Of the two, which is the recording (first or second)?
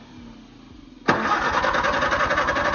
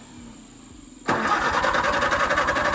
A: first